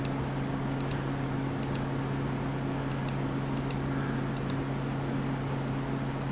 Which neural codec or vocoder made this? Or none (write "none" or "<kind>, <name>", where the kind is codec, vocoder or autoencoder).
none